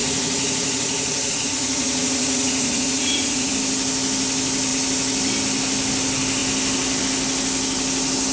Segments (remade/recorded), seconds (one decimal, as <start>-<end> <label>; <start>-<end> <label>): 0.0-3.5 remade; 3.5-8.3 recorded